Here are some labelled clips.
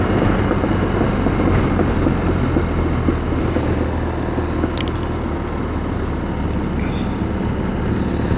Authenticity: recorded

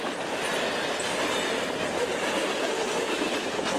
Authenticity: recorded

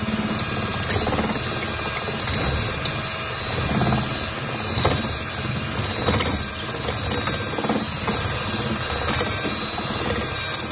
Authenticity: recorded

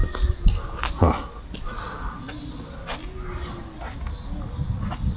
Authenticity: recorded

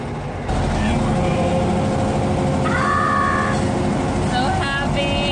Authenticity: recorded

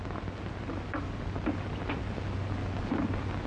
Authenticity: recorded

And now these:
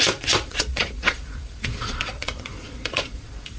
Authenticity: remade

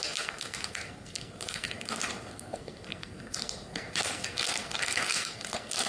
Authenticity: remade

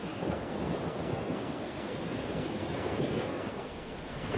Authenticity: remade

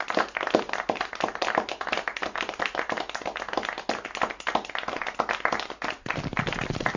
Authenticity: recorded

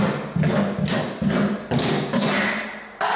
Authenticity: recorded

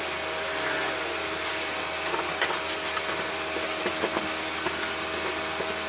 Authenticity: recorded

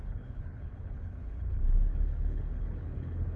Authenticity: remade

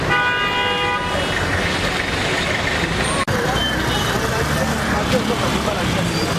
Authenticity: recorded